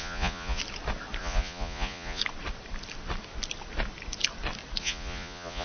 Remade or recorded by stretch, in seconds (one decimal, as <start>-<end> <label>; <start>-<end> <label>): 0.0-0.6 remade; 0.6-1.2 recorded; 1.2-2.2 remade; 2.2-4.8 recorded; 4.8-5.6 remade